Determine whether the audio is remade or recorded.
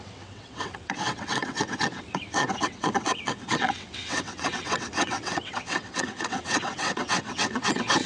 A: remade